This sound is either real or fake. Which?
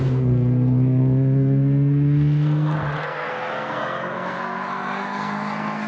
fake